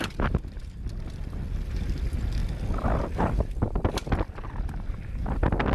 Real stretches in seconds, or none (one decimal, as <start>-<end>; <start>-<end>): 0.0-5.7